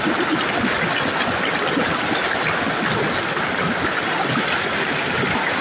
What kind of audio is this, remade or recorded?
recorded